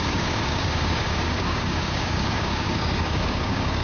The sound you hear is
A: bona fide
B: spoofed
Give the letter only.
B